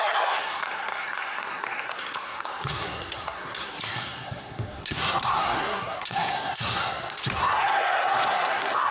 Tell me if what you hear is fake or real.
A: fake